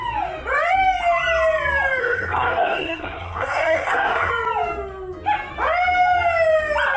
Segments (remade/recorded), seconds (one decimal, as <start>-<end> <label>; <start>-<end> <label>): 0.0-2.0 recorded; 2.0-4.3 remade; 4.3-7.0 recorded